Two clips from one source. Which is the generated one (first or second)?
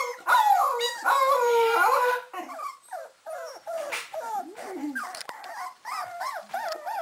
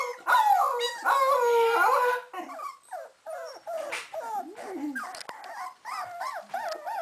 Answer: first